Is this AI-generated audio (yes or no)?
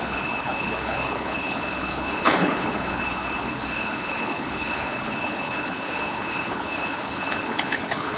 yes